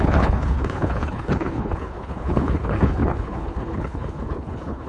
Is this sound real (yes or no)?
no